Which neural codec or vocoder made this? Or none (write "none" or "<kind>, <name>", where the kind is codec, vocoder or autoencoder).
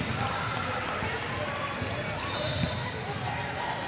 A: none